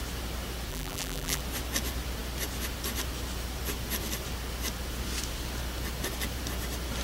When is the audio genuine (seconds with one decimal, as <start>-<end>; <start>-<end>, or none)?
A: 0.0-0.7; 1.4-7.0